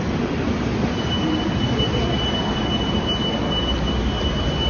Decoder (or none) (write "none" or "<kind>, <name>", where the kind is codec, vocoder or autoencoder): none